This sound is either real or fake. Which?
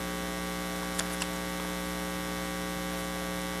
real